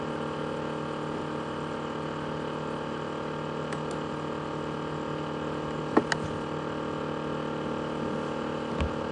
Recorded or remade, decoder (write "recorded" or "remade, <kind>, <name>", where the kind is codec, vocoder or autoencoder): recorded